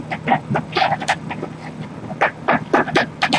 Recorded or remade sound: recorded